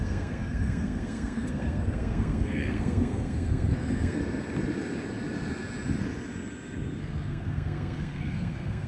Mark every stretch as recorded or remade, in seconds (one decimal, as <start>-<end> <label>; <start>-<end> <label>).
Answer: 0.0-4.2 remade; 4.2-7.0 recorded; 7.0-8.9 remade